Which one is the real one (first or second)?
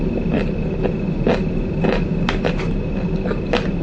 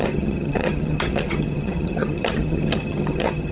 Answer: first